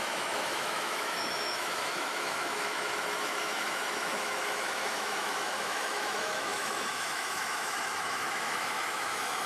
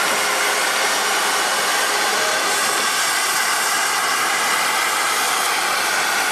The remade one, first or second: first